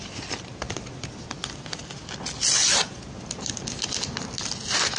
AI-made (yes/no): no